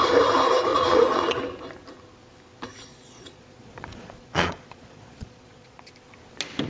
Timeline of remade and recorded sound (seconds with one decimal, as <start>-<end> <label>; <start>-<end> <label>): 0.0-0.7 recorded; 0.7-1.4 remade; 1.4-2.9 recorded; 2.9-5.9 remade; 5.9-6.7 recorded